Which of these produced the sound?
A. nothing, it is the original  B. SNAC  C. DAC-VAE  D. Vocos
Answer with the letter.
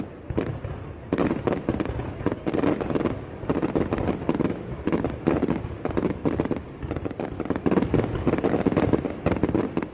A